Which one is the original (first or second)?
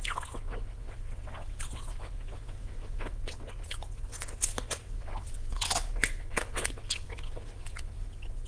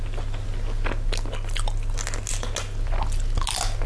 second